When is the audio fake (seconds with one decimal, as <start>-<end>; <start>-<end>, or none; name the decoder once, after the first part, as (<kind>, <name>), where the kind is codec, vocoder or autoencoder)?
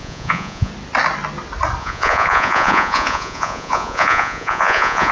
0.0-0.7 (vocoder, Vocos); 1.8-5.1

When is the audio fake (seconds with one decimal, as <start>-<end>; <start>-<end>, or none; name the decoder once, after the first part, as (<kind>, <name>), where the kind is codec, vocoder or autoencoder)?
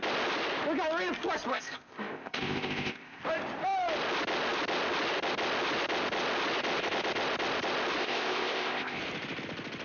1.5-3.2 (codec, ZipCodec); 8.0-9.0